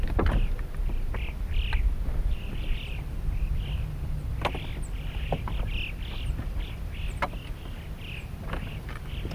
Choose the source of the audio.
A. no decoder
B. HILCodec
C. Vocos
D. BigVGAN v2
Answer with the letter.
A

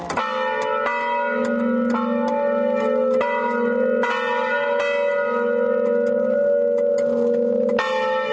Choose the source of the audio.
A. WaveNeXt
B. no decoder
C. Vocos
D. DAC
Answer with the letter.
B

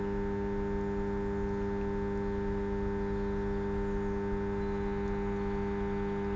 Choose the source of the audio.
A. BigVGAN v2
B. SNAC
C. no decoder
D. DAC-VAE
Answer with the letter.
C